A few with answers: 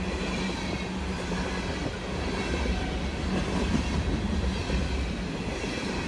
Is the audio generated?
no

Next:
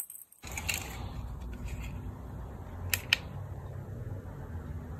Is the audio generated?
no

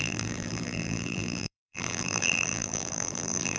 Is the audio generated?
yes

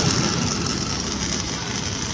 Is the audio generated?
no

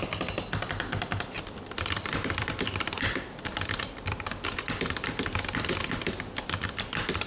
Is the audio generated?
yes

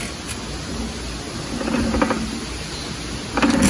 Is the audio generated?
no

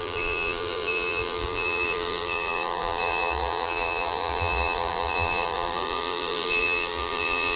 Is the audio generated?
yes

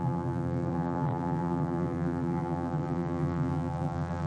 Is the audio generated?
yes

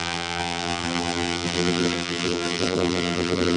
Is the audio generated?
yes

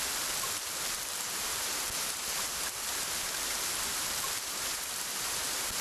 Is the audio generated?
yes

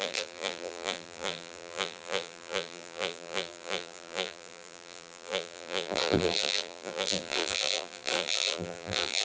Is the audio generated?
yes